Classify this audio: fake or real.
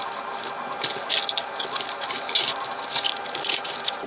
real